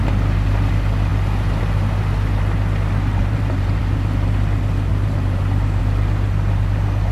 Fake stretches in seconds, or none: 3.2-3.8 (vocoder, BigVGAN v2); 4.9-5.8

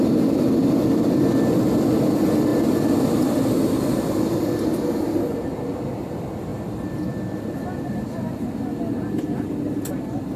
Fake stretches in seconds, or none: none